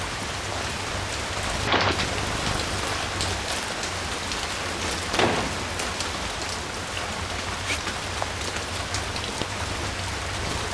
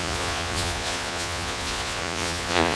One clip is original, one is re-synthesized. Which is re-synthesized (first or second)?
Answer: second